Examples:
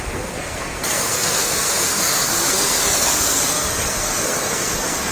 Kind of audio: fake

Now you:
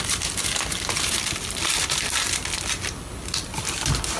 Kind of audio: real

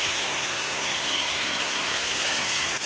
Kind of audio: fake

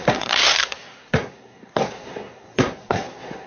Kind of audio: fake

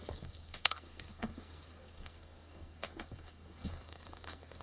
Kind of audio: fake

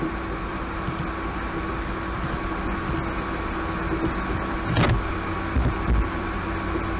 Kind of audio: real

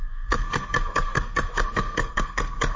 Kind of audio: fake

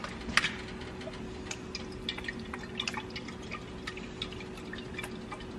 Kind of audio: real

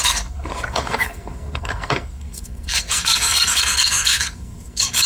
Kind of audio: fake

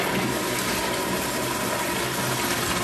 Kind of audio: real